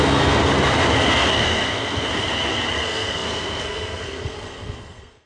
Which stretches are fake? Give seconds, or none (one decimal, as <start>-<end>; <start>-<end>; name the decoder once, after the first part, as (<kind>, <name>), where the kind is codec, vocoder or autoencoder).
0.0-0.4 (codec, SNAC); 1.1-2.1; 2.7-5.3